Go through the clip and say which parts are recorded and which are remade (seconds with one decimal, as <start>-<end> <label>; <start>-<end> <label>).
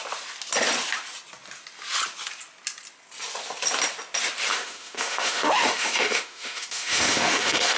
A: 0.0-4.5 recorded; 4.5-7.8 remade